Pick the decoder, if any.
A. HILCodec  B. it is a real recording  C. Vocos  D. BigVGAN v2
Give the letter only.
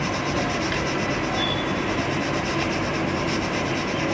B